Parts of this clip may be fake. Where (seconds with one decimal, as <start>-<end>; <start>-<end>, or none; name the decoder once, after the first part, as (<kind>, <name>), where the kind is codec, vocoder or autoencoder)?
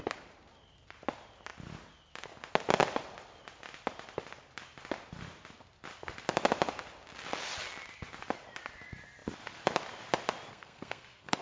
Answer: 10.5-11.4 (codec, SNAC)